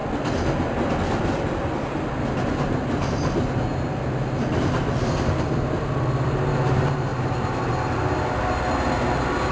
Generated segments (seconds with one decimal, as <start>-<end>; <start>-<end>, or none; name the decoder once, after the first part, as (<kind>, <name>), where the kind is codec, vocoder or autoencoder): none

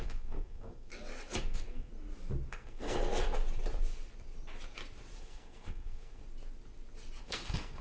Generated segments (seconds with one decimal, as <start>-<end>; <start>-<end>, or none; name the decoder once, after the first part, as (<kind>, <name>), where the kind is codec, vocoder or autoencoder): 0.0-0.9 (codec, SNAC); 1.4-1.9; 2.5-3.1; 5.2-6.2; 7.2-7.8

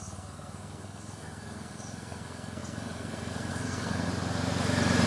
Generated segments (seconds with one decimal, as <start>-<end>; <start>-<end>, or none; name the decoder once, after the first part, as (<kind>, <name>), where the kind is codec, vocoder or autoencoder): 0.0-4.1 (codec, SNAC)